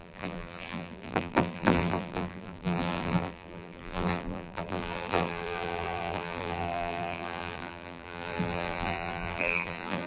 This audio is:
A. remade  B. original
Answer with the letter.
A